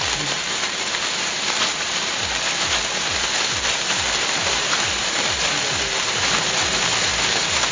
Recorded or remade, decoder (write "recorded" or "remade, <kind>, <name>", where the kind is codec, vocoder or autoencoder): remade, vocoder, BigVGAN v2